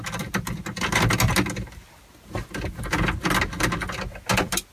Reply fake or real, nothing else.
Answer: real